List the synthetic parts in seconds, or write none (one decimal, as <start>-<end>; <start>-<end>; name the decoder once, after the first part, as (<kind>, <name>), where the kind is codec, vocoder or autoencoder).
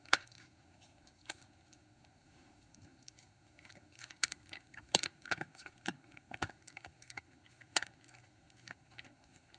0.0-9.6 (codec, SNAC)